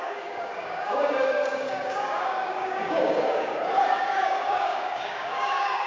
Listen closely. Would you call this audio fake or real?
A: fake